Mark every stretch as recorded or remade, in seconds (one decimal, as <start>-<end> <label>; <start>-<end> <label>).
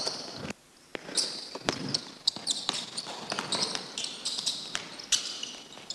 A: 0.0-5.9 recorded